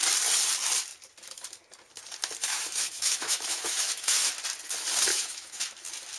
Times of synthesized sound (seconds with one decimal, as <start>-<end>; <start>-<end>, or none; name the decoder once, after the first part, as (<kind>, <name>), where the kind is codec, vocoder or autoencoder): 2.4-4.3 (autoencoder, DAC-VAE); 5.1-5.6